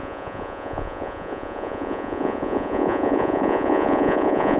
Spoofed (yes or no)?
yes